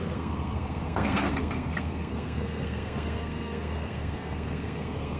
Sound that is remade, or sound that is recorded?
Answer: remade